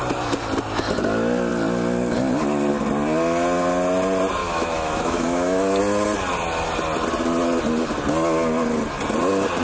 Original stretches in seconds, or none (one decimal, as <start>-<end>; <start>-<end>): 0.0-4.4; 5.8-9.6